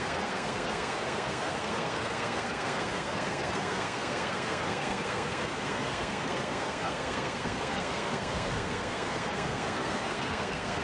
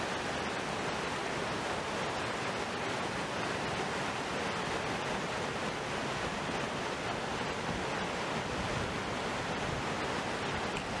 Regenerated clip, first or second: first